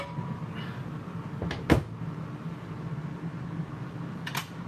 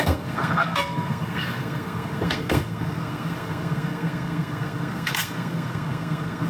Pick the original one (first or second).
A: first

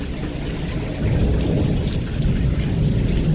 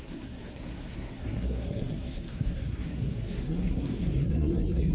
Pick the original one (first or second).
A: first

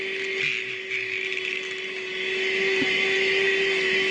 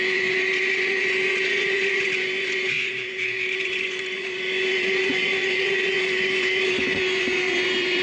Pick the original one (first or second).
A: first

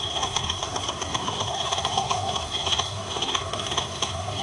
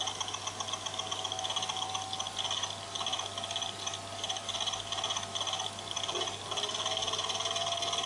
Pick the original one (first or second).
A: second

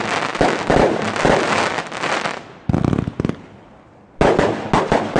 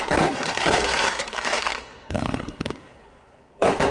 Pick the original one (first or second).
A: first